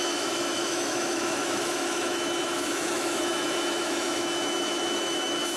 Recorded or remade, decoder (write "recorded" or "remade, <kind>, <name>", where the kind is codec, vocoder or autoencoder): remade, autoencoder, DAC-VAE